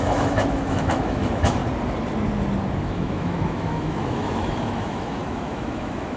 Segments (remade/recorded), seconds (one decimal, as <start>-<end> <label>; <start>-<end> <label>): 0.0-1.6 remade; 1.6-2.8 recorded; 2.8-6.2 remade